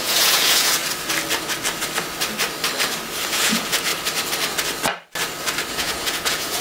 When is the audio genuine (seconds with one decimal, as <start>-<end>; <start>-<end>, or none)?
0.8-3.3; 3.9-5.7